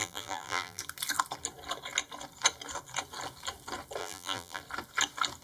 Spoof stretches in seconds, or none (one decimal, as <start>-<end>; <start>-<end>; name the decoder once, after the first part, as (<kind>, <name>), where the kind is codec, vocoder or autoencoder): 0.0-0.8 (vocoder, BigVGAN v2); 4.0-4.6